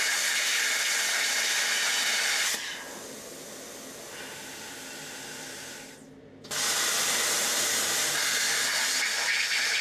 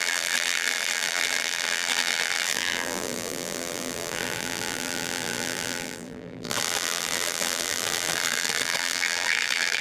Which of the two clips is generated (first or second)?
second